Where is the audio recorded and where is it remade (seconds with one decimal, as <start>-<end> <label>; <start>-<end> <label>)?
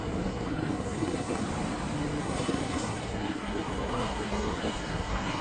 0.0-1.4 remade; 1.4-2.2 recorded; 2.2-5.4 remade